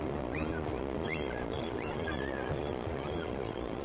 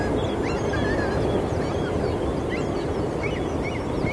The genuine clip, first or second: second